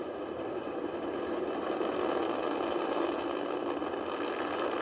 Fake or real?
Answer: fake